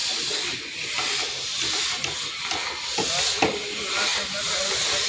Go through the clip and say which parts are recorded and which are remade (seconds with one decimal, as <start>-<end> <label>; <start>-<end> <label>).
0.0-5.1 recorded